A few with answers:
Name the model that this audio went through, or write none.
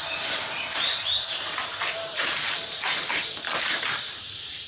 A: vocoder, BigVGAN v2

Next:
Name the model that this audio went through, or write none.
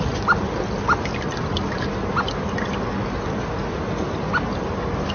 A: none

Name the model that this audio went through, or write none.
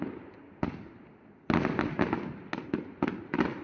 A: none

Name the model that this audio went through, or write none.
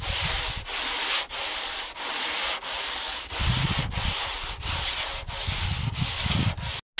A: none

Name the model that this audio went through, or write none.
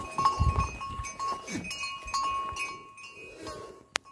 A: none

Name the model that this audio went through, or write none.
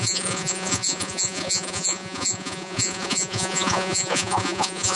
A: vocoder, Vocos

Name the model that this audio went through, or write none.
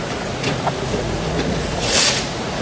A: vocoder, Vocos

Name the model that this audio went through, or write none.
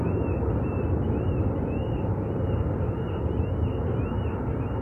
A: none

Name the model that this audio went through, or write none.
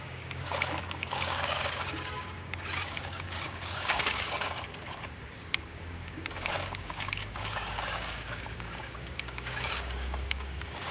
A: codec, DAC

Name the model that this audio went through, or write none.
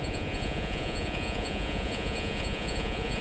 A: vocoder, Vocos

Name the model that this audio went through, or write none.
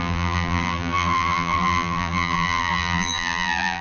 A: vocoder, BigVGAN v2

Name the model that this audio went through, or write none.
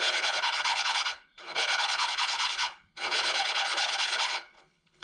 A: codec, HILCodec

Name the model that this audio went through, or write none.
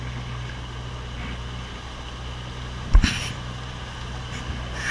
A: none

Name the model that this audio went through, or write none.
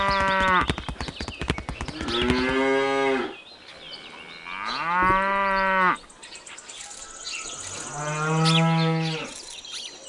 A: none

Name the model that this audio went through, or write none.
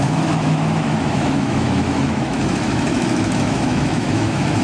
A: autoencoder, DAC-VAE